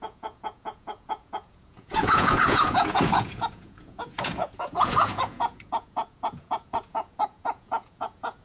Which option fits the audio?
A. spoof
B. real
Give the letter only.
A